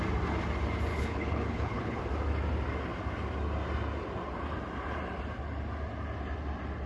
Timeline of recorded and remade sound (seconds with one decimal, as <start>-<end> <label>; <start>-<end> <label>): 0.0-0.9 recorded; 0.9-2.0 remade; 2.0-6.9 recorded